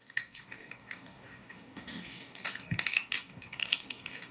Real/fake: fake